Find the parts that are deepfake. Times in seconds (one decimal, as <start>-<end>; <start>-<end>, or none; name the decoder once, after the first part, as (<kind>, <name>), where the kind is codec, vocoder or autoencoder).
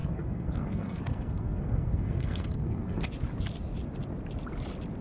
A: 0.0-3.0 (codec, SNAC)